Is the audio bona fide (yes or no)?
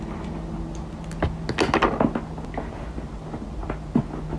yes